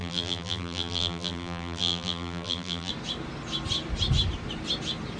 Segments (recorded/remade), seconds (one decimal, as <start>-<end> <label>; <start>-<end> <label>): 0.0-2.9 remade; 2.9-5.2 recorded